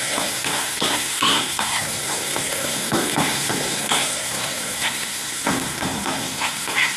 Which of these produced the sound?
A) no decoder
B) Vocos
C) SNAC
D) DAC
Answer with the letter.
C